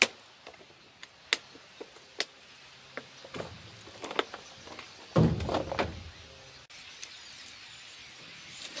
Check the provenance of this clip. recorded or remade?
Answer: recorded